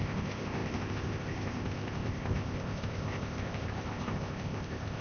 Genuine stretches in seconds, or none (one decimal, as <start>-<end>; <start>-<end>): none